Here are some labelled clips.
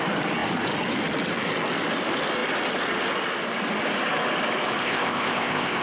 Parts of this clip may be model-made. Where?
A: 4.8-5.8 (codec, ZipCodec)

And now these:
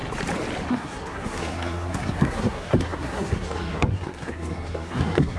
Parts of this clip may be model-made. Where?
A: 0.7-5.4 (codec, SNAC)

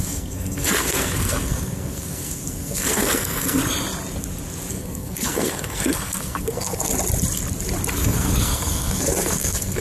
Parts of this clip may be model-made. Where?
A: 0.0-3.6 (codec, SNAC); 4.7-6.9; 7.9-9.8

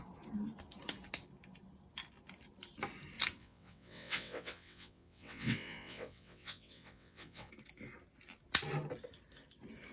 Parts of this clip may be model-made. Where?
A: 3.4-7.5 (vocoder, WaveNeXt)

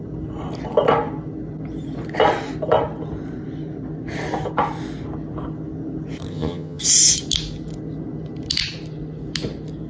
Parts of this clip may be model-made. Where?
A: 6.3-6.8 (vocoder, HiFi-GAN)

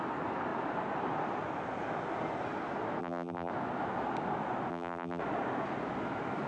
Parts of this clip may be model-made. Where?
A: 3.0-3.5 (vocoder, BigVGAN v2); 4.7-5.2

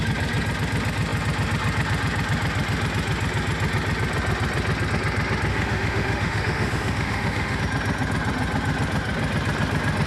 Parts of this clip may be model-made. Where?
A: 5.5-7.6 (autoencoder, DAC-VAE)